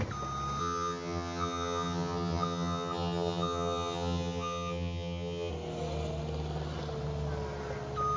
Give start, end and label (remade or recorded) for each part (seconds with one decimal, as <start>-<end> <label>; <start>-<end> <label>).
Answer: 0.0-0.6 recorded; 0.6-5.5 remade; 5.5-8.2 recorded